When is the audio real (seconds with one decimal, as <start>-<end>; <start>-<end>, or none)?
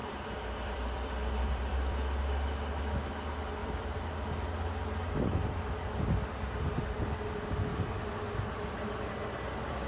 2.2-3.6; 4.2-9.9